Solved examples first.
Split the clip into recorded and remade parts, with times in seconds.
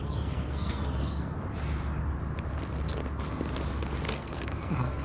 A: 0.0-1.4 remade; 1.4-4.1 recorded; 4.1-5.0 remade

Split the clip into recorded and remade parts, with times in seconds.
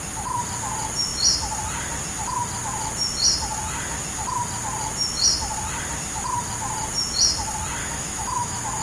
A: 0.0-7.8 recorded; 7.8-8.8 remade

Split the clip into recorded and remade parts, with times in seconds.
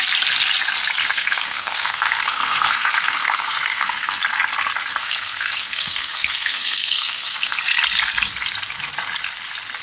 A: 0.0-1.0 recorded; 1.0-4.2 remade; 4.2-5.0 recorded; 5.0-7.6 remade; 7.6-9.8 recorded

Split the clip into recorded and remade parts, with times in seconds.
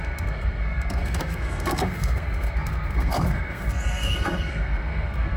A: 0.0-5.4 remade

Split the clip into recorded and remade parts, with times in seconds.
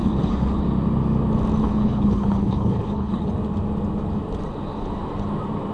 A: 0.0-0.6 remade; 0.6-1.6 recorded; 1.6-3.3 remade; 3.3-5.7 recorded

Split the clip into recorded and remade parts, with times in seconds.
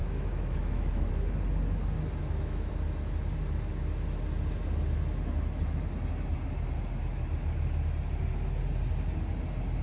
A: 0.0-1.1 remade; 1.1-2.2 recorded; 2.2-2.7 remade; 2.7-9.8 recorded